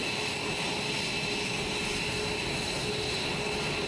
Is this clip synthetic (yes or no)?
no